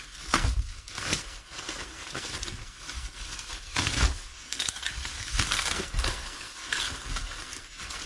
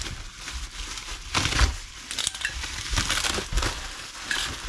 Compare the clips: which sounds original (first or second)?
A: second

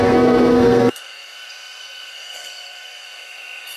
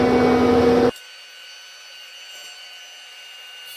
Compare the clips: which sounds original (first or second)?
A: second